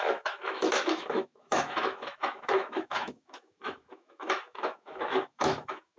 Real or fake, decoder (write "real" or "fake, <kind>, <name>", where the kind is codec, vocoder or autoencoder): fake, autoencoder, DAC-VAE